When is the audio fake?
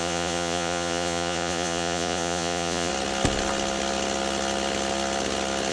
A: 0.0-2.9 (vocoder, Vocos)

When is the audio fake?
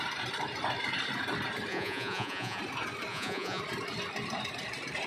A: 1.7-2.6 (vocoder, Vocos); 3.1-3.6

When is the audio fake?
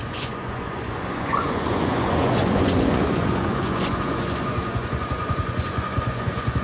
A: 0.0-6.6 (vocoder, Vocos)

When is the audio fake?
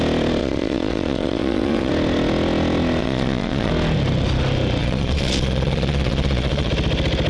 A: 0.4-1.9 (vocoder, Vocos); 3.0-3.7; 4.8-6.7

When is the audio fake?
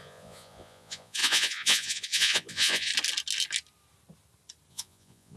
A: 0.0-2.9 (vocoder, Vocos); 4.7-5.4